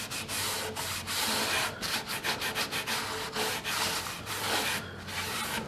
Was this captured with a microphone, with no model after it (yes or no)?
yes